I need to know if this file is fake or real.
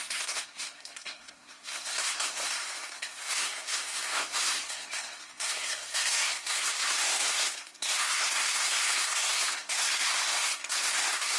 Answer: fake